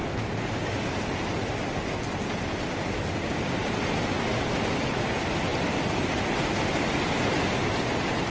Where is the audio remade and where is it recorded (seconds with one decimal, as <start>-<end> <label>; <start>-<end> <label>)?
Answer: 0.0-8.3 recorded

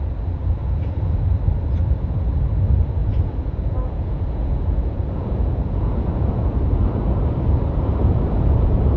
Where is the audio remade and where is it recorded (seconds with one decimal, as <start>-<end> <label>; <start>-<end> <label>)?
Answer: 0.0-0.6 recorded; 0.6-1.2 remade; 1.2-3.0 recorded; 3.0-6.6 remade; 6.6-8.0 recorded; 8.0-9.0 remade

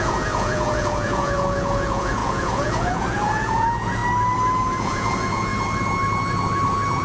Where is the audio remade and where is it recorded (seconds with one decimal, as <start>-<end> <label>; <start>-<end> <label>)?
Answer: 0.0-4.0 remade; 4.0-4.8 recorded; 4.8-5.5 remade; 5.5-7.0 recorded

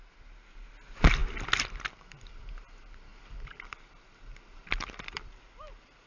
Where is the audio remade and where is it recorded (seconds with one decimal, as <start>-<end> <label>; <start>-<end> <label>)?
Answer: 0.0-6.1 recorded

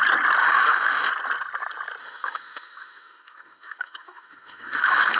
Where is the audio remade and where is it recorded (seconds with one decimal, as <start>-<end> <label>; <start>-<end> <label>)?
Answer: 0.0-0.4 recorded; 0.4-1.1 remade; 1.1-2.0 recorded; 2.0-5.2 remade

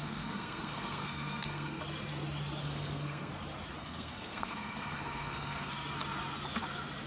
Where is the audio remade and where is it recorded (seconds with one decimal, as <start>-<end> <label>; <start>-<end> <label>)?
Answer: 0.0-1.8 remade; 1.8-2.6 recorded; 2.6-3.3 remade; 3.3-3.8 recorded; 3.8-5.7 remade; 5.7-7.1 recorded

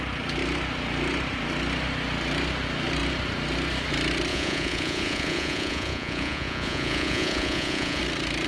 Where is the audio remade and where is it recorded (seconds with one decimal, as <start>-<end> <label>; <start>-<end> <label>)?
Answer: 0.0-4.3 recorded; 4.3-8.0 remade; 8.0-8.5 recorded